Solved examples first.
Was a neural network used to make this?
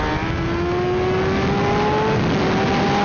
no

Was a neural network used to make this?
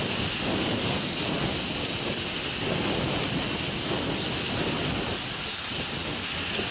no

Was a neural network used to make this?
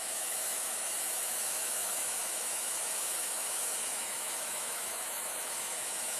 yes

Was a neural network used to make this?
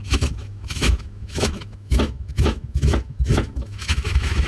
yes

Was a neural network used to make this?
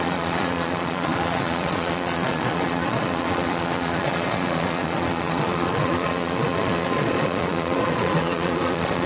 yes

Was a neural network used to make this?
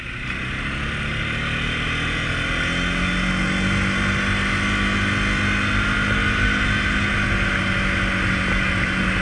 no